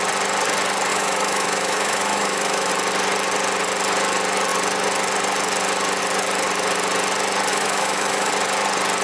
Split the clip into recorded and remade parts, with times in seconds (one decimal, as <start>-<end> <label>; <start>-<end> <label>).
0.0-0.9 recorded; 0.9-2.7 remade; 2.7-7.5 recorded; 7.5-8.3 remade; 8.3-9.0 recorded